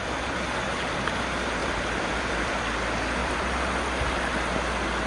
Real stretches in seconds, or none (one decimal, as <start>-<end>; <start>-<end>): 0.0-1.6; 2.6-3.2; 3.8-5.1